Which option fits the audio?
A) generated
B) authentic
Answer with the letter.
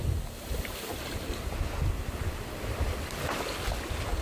B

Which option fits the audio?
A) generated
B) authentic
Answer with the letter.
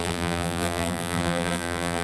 A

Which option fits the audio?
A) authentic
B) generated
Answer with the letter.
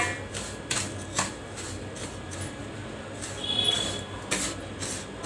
A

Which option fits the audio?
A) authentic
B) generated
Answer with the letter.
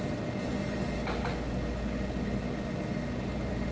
A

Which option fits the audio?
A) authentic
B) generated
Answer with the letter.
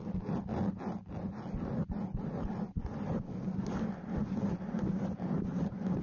A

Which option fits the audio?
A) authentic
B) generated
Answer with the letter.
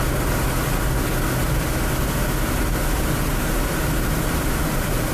A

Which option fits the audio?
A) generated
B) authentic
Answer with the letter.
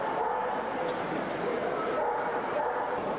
B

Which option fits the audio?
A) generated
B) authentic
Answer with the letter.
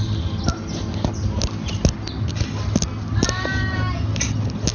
B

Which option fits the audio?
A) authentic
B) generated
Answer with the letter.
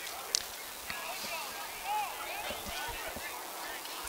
A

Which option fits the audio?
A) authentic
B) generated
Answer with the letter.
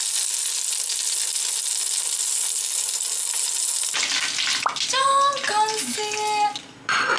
A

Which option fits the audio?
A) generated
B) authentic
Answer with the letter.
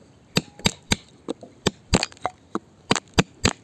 B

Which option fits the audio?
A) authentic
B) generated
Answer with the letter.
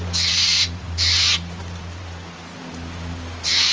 B